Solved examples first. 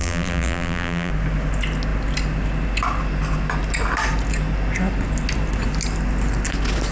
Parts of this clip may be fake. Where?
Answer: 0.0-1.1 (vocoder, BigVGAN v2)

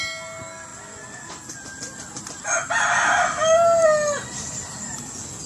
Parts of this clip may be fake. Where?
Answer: none